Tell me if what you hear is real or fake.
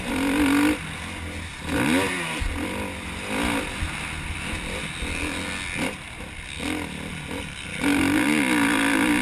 real